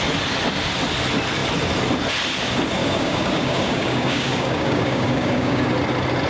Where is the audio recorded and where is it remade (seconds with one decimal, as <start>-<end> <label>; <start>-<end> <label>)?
0.0-2.8 recorded; 2.8-5.7 remade; 5.7-6.3 recorded